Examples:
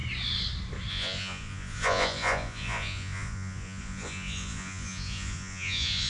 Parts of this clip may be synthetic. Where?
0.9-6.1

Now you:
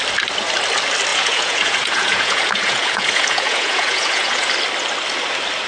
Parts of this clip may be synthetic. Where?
1.1-4.5